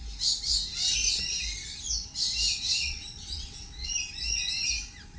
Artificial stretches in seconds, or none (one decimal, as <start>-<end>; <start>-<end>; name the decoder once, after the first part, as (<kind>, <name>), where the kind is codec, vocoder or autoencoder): 2.5-3.9 (vocoder, WaveNeXt)